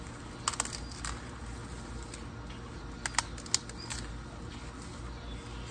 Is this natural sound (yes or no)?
yes